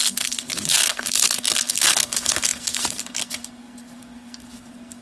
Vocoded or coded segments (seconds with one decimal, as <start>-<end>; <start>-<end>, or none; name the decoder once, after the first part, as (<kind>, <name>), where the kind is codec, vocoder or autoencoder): 0.0-5.0 (codec, SNAC)